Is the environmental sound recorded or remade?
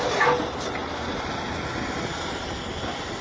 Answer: recorded